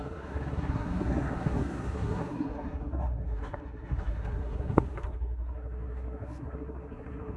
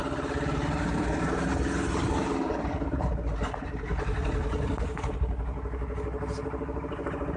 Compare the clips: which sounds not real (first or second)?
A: first